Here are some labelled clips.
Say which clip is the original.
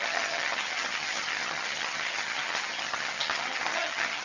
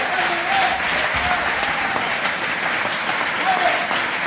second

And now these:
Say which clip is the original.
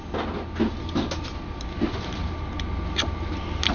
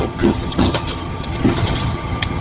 first